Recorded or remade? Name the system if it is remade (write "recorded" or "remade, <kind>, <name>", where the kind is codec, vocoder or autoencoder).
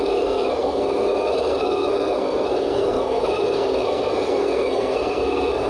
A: remade, codec, SNAC